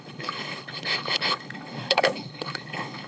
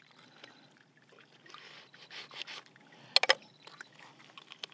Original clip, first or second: second